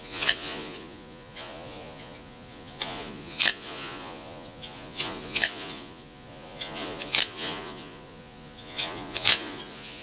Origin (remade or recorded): remade